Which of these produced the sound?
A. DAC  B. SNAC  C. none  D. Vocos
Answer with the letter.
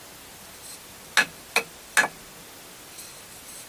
C